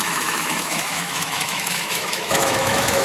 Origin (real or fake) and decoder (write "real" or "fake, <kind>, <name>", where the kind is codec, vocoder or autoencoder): fake, autoencoder, DAC-VAE